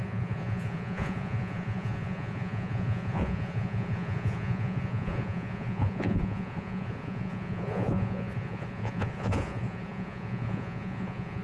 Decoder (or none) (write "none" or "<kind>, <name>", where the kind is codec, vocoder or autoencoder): vocoder, Vocos